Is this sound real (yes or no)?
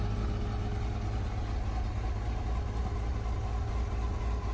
yes